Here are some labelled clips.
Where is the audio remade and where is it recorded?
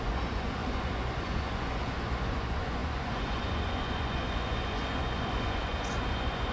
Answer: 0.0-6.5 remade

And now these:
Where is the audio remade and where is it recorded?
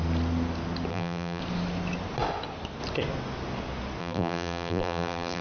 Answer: 0.0-0.9 recorded; 0.9-1.4 remade; 1.4-4.0 recorded; 4.0-5.4 remade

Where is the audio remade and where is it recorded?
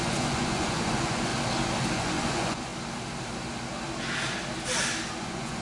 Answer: 0.0-1.3 remade; 1.3-1.9 recorded; 1.9-2.7 remade; 2.7-5.1 recorded; 5.1-5.6 remade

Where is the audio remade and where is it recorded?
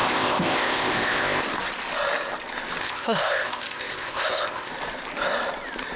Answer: 0.0-1.4 remade; 1.4-2.8 recorded; 2.8-4.7 remade; 4.7-6.0 recorded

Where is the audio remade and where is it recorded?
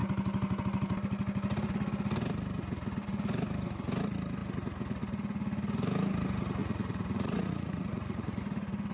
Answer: 0.0-6.6 recorded; 6.6-8.4 remade; 8.4-8.9 recorded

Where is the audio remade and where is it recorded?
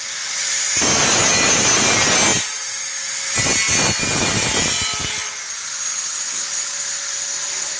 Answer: 0.0-7.8 recorded